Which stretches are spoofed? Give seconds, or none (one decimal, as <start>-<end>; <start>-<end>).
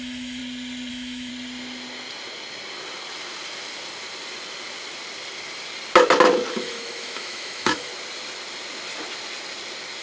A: 0.0-0.4; 0.9-1.3; 6.5-7.9